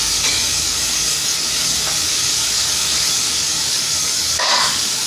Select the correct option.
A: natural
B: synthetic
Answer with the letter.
B